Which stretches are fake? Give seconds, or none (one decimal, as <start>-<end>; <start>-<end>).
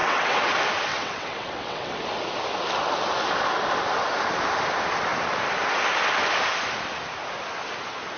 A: 0.0-0.5; 0.9-2.0